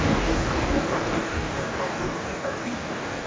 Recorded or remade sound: remade